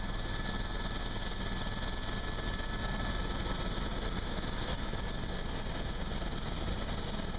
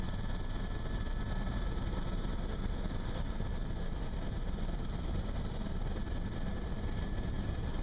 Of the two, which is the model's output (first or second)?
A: second